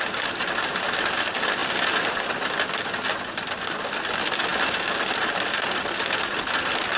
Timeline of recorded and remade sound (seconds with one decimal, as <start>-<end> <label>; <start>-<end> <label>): 0.0-7.0 recorded